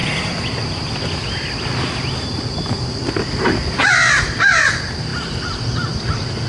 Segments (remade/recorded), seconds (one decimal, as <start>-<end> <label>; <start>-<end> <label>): 0.0-6.5 recorded